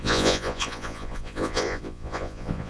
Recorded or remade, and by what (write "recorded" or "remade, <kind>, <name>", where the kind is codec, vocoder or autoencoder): remade, vocoder, Vocos